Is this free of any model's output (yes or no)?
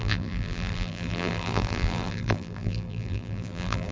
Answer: no